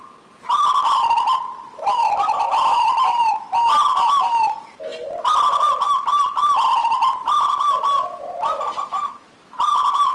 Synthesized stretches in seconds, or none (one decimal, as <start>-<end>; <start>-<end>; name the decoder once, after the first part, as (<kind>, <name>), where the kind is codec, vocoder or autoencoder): 0.0-3.2 (vocoder, BigVGAN v2); 3.9-4.9; 5.6-10.1